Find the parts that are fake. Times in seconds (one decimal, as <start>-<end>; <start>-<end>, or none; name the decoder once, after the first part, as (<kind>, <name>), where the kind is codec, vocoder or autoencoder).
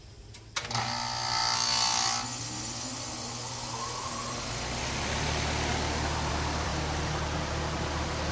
0.0-1.4 (vocoder, BigVGAN v2); 6.3-6.7